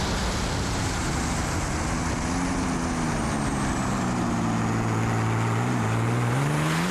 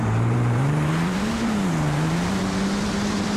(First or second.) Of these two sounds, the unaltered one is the first